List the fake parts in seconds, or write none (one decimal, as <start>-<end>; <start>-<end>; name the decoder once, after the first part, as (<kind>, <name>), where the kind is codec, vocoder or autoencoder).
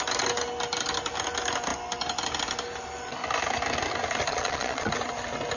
4.3-4.9 (vocoder, Vocos)